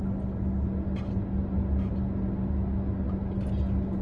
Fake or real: real